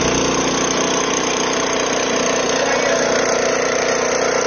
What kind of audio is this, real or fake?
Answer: real